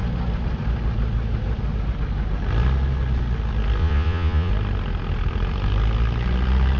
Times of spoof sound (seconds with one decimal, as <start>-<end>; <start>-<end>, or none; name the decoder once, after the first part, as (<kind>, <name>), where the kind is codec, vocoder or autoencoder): 3.8-4.5 (vocoder, Vocos)